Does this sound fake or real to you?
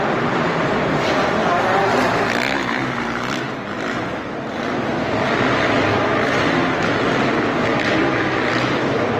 real